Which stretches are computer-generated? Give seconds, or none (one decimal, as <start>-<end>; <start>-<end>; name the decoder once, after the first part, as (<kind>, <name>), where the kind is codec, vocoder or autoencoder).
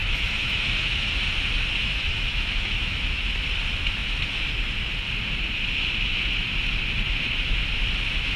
0.0-1.1 (autoencoder, DAC-VAE); 1.8-3.2